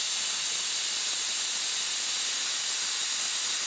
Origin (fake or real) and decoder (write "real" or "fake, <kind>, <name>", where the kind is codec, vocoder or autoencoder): real